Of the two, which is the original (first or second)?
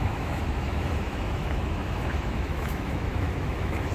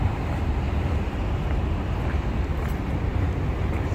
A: second